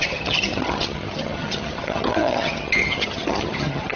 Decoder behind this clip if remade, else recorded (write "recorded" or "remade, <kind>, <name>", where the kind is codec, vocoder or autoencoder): remade, vocoder, HiFi-GAN